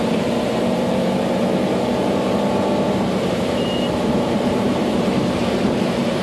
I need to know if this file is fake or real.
fake